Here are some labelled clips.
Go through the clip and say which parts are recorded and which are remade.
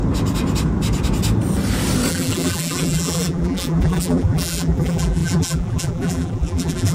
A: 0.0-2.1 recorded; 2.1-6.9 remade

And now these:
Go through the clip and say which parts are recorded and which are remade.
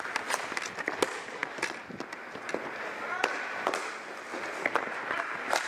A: 0.0-5.7 recorded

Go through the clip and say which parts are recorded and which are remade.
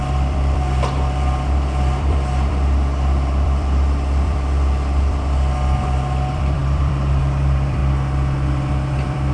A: 0.0-7.8 remade; 7.8-8.7 recorded; 8.7-9.3 remade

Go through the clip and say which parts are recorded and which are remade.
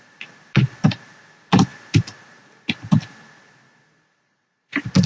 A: 0.0-5.1 recorded